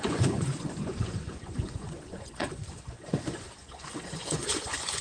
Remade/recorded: remade